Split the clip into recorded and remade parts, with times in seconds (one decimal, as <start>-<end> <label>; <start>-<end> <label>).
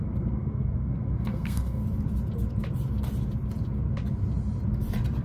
0.0-1.8 remade; 1.8-5.2 recorded